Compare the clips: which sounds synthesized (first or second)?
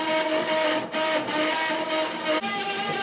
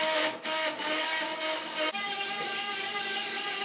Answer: second